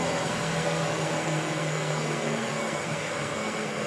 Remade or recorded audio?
remade